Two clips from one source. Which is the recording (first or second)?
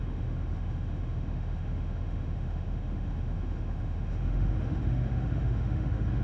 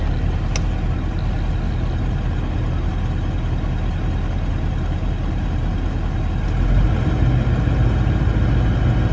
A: second